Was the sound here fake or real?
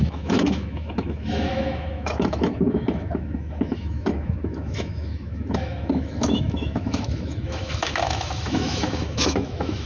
fake